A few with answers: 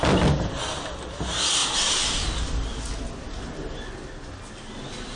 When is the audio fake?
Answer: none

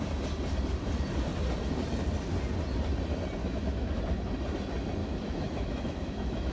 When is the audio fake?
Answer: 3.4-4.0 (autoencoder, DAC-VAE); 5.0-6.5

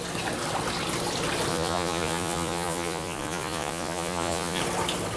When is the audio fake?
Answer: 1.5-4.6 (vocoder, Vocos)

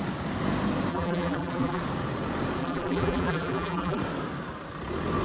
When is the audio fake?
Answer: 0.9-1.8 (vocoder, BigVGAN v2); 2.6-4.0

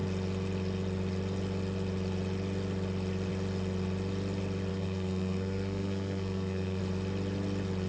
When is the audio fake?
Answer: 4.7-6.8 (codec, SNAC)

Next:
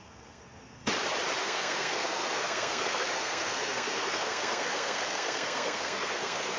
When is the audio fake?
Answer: 0.0-0.8 (codec, SNAC); 1.4-6.6

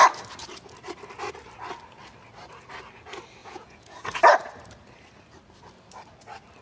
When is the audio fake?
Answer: 3.4-4.2 (vocoder, Vocos)